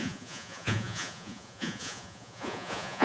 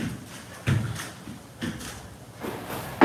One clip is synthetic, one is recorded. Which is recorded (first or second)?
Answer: second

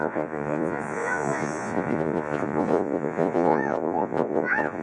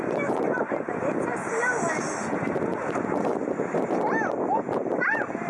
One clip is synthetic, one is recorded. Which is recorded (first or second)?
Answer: second